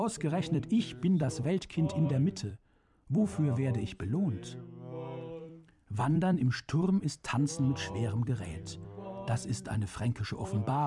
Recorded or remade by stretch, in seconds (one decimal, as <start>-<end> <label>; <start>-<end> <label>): 0.0-3.6 remade; 3.6-5.4 recorded; 5.4-10.9 remade